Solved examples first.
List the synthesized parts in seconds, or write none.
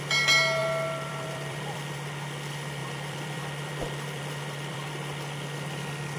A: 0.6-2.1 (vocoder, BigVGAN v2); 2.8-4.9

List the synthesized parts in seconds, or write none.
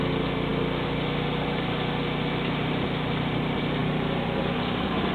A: 3.8-5.1 (vocoder, BigVGAN v2)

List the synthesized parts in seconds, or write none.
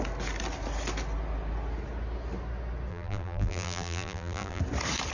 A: 2.9-4.6 (vocoder, BigVGAN v2)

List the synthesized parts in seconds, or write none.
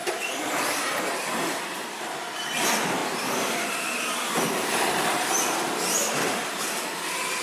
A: 0.0-0.9 (vocoder, BigVGAN v2)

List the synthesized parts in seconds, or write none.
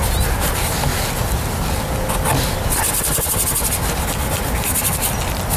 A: none